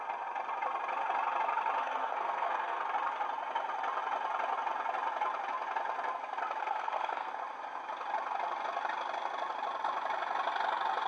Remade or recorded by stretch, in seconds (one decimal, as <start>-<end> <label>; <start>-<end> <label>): 0.0-1.8 recorded; 1.8-2.8 remade; 2.8-6.6 recorded; 6.6-7.3 remade; 7.3-11.1 recorded